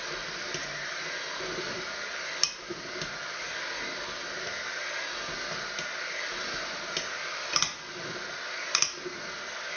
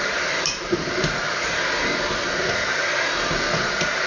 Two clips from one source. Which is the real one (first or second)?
first